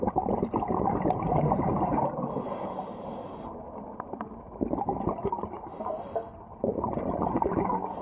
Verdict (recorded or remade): recorded